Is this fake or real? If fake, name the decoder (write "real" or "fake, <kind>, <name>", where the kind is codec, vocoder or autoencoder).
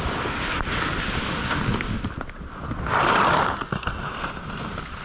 real